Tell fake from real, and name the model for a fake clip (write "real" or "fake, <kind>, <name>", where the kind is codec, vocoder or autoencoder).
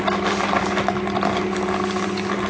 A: real